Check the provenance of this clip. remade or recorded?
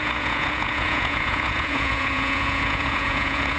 remade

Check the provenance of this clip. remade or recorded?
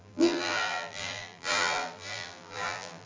remade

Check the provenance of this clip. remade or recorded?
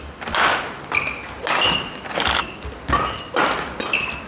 recorded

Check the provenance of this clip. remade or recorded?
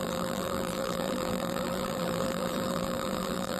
remade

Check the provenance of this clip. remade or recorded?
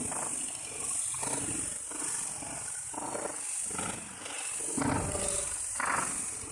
recorded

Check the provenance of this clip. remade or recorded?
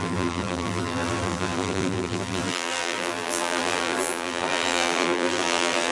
remade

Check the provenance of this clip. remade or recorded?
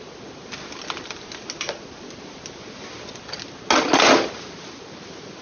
recorded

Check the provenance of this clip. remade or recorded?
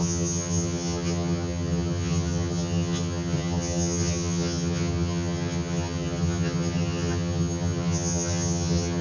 remade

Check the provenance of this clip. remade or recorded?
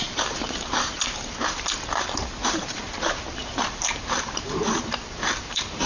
remade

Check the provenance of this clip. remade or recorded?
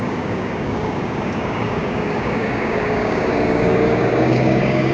remade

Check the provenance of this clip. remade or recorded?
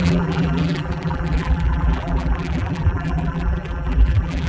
remade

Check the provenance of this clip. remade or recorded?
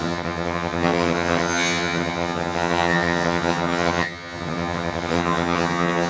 remade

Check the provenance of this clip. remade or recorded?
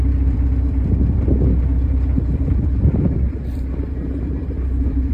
remade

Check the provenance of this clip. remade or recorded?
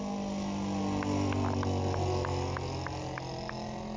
recorded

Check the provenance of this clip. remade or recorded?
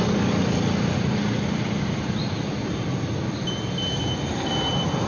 recorded